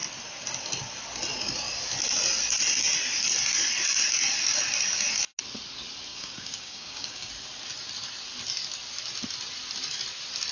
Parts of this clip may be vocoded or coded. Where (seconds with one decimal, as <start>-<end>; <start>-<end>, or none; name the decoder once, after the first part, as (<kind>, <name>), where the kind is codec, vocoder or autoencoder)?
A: 6.1-7.3 (codec, DAC)